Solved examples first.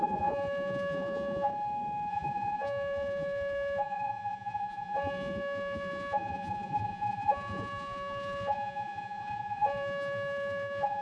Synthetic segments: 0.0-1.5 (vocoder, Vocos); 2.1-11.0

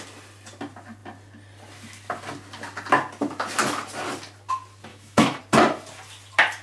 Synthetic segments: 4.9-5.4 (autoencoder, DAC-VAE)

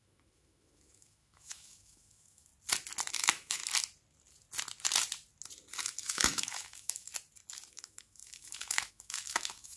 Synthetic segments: 0.0-2.5 (autoencoder, DAC-VAE); 3.1-3.6; 5.8-7.1; 7.7-9.8

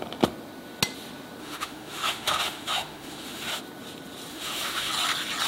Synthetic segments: 1.4-3.6 (autoencoder, DAC-VAE); 4.3-4.9

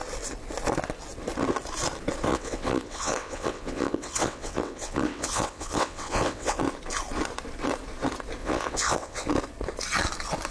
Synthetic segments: 2.3-6.6 (vocoder, WaveNeXt); 8.4-9.3

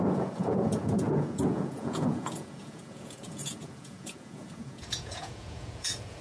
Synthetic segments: 0.0-6.2 (vocoder, Vocos)